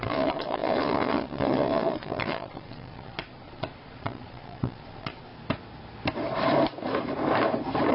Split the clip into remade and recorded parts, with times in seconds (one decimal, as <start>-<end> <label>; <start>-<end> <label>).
0.0-5.3 remade; 5.3-7.9 recorded

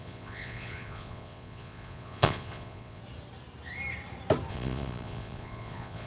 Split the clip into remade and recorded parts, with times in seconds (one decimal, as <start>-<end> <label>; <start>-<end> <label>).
0.0-3.0 remade; 3.0-4.5 recorded; 4.5-6.1 remade

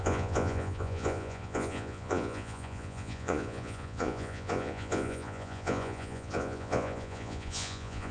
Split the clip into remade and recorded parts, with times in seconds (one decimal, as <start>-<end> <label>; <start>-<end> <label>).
0.0-8.1 remade

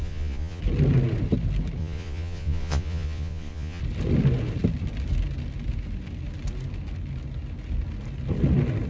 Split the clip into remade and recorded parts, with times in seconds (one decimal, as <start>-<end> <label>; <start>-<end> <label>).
0.0-0.6 remade; 0.6-1.8 recorded; 1.8-3.8 remade; 3.8-8.9 recorded

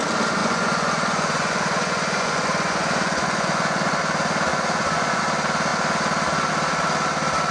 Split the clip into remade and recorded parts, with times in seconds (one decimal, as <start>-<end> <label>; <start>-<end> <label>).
0.0-0.4 recorded; 0.4-3.9 remade; 3.9-4.5 recorded; 4.5-5.2 remade; 5.2-7.5 recorded

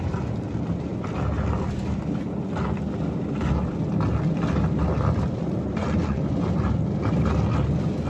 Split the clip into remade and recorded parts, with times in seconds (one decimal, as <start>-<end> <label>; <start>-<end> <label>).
0.0-5.8 recorded; 5.8-6.3 remade; 6.3-8.1 recorded

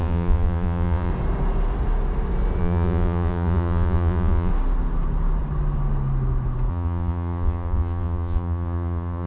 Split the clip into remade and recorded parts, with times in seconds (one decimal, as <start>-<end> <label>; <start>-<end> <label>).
0.0-1.1 remade; 1.1-2.6 recorded; 2.6-4.5 remade; 4.5-6.7 recorded; 6.7-9.3 remade

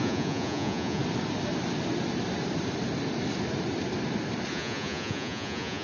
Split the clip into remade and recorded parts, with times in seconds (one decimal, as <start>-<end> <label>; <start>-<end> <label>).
0.0-1.0 remade; 1.0-4.5 recorded; 4.5-5.8 remade